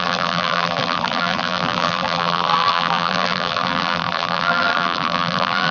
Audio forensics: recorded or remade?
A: remade